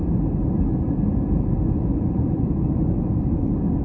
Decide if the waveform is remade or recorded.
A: recorded